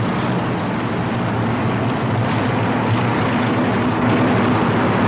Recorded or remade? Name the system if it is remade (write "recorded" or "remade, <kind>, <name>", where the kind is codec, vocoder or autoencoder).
recorded